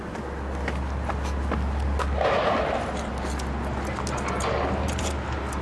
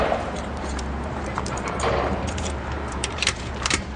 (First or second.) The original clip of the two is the first